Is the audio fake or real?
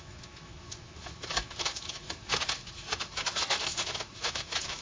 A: fake